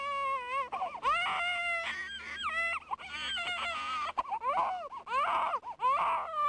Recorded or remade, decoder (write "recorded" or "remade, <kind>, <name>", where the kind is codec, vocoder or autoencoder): recorded